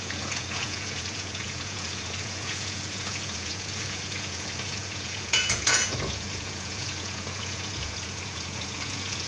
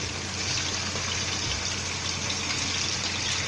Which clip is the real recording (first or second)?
second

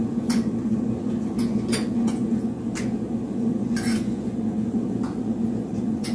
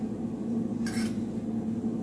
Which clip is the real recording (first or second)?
second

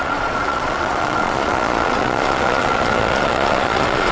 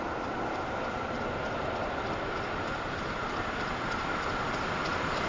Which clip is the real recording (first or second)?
second